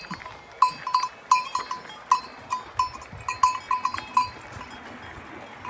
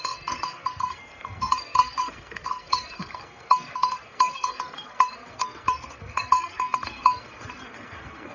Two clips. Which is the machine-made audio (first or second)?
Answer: second